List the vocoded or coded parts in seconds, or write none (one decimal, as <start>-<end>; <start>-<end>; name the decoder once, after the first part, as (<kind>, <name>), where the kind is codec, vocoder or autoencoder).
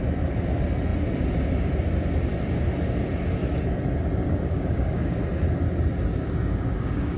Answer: 4.2-5.2 (codec, DAC); 6.1-7.2